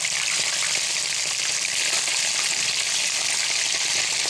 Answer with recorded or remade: recorded